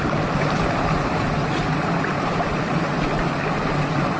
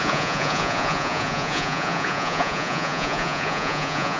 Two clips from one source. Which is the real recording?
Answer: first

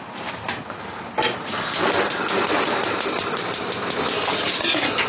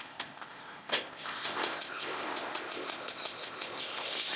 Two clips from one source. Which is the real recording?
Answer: first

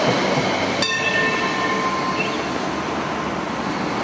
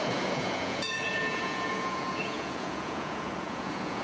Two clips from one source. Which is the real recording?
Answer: first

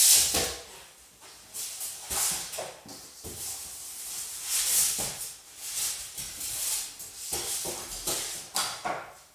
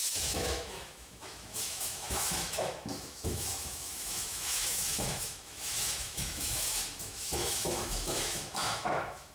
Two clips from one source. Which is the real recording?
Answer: first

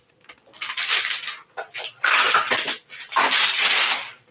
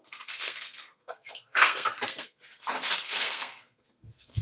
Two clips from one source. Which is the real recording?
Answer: first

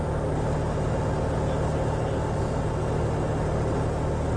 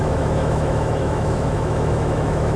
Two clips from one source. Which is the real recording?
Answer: first